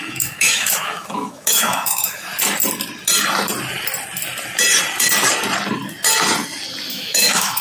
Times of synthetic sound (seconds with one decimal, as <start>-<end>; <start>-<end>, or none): 0.0-2.3; 6.9-7.6